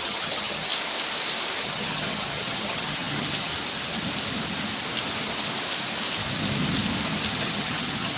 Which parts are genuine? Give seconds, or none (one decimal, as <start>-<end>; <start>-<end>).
0.7-1.6; 3.5-7.3